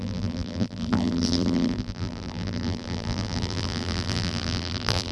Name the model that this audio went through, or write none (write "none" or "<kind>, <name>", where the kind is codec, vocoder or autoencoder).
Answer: vocoder, BigVGAN v2